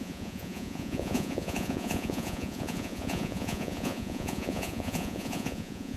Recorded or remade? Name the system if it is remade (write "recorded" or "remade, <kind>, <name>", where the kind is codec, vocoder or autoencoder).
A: remade, vocoder, Vocos